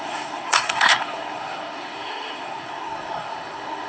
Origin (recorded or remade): remade